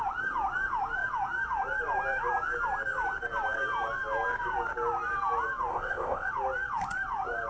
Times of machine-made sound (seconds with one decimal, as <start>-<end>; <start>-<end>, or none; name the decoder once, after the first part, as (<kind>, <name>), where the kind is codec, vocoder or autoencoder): 5.7-6.3 (codec, ZipCodec)